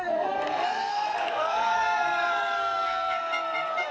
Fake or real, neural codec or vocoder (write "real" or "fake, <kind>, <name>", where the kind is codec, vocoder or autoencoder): fake, codec, SNAC